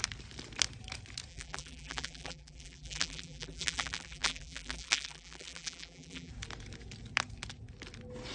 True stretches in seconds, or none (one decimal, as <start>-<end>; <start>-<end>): 0.0-1.3; 6.3-8.3